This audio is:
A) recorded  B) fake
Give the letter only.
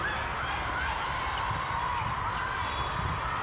A